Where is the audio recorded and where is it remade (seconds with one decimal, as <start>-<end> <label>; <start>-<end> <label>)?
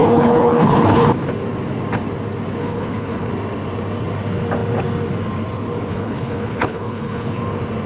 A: 0.0-1.1 remade; 1.1-2.6 recorded; 2.6-3.3 remade; 3.3-5.9 recorded; 5.9-7.4 remade; 7.4-7.9 recorded